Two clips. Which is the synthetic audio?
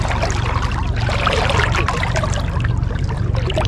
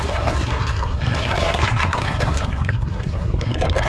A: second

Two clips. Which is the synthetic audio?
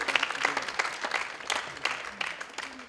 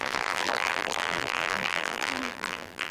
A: second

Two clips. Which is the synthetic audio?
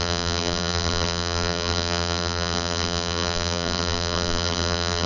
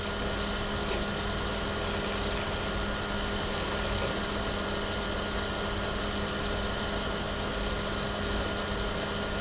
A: first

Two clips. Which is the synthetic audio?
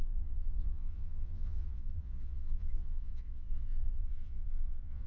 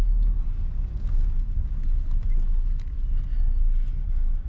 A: first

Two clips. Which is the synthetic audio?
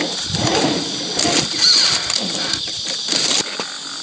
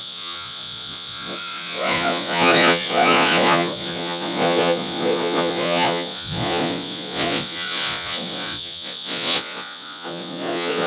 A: second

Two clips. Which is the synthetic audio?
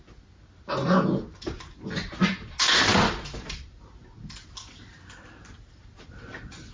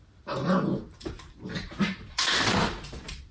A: second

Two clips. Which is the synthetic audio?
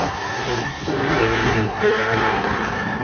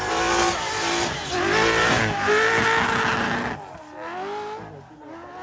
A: first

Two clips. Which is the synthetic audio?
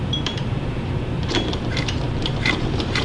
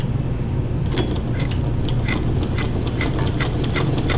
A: first